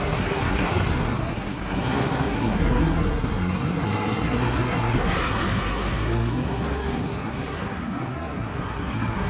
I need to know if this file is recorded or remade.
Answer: remade